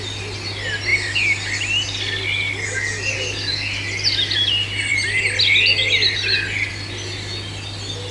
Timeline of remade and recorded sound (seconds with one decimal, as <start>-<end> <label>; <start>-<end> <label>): 0.0-8.1 recorded